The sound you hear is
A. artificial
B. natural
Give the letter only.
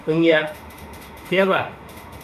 A